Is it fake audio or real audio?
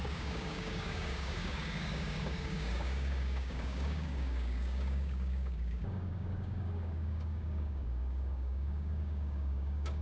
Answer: fake